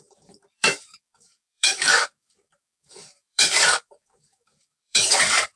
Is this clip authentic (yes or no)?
no